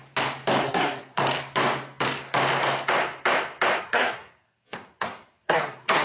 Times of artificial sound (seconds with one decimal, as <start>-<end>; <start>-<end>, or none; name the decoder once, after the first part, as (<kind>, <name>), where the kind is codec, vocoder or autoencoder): 0.6-1.2 (codec, SNAC); 3.8-6.0

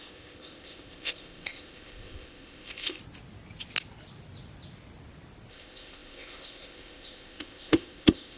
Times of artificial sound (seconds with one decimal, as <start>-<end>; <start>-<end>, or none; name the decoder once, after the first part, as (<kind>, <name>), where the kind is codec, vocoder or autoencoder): 0.0-3.0 (codec, ZipCodec); 5.5-8.4

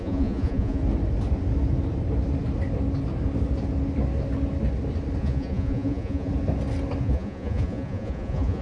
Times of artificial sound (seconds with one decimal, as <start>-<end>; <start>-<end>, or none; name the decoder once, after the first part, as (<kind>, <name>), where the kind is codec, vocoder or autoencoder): 0.0-0.8 (vocoder, Vocos); 5.2-6.3; 7.0-8.6

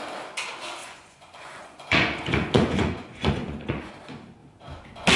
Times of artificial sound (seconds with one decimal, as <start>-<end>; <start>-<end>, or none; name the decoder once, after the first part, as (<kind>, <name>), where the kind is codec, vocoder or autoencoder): 0.8-3.9 (vocoder, Vocos)

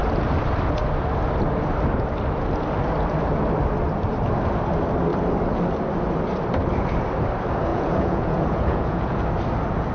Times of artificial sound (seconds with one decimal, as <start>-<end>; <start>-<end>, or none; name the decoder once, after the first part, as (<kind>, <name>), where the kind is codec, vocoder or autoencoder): 7.7-9.2 (vocoder, Vocos)

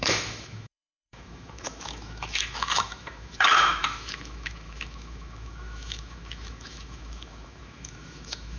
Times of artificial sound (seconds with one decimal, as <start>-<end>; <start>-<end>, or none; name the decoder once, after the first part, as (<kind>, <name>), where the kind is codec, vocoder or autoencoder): 0.0-8.6 (autoencoder, DAC-VAE)

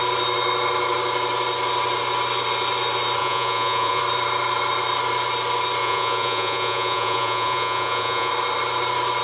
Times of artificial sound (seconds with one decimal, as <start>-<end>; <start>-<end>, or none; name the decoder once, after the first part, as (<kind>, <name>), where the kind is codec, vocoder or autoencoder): 3.2-4.0 (vocoder, Vocos); 5.8-8.3